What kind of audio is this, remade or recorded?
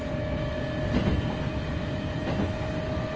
recorded